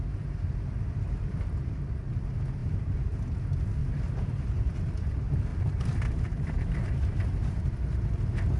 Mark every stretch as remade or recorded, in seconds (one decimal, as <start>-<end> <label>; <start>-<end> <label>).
0.0-2.6 recorded; 2.6-3.2 remade; 3.2-3.8 recorded; 3.8-4.7 remade; 4.7-5.5 recorded; 5.5-7.6 remade; 7.6-8.6 recorded